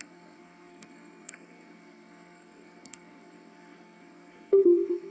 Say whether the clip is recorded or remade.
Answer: remade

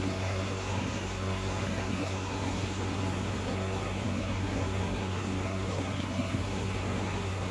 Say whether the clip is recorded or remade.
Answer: remade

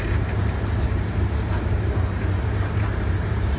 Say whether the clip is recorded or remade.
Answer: remade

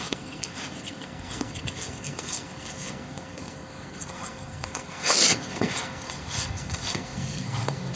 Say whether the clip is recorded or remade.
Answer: remade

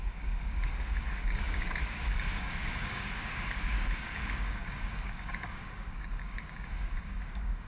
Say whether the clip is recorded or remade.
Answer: remade